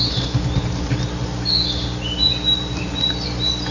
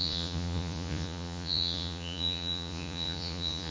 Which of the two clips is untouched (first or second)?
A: first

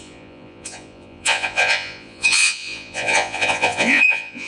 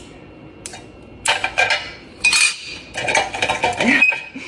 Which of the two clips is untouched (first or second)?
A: second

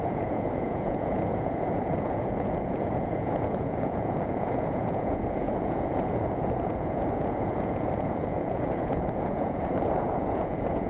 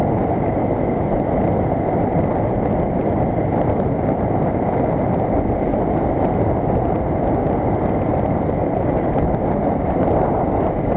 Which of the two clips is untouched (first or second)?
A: second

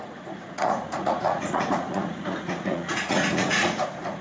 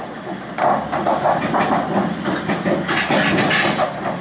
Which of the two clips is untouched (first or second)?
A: second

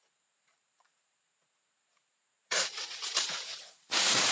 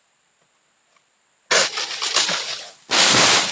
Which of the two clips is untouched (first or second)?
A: second